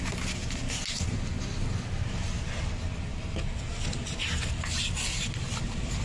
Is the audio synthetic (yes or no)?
no